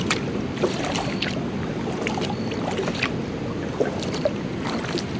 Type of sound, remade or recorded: recorded